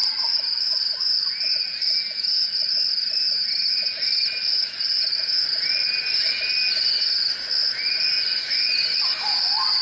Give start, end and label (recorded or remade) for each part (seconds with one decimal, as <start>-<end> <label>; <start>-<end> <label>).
0.0-9.8 recorded